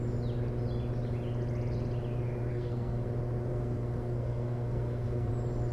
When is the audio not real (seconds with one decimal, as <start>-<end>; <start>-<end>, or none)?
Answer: 2.5-3.1; 3.5-5.3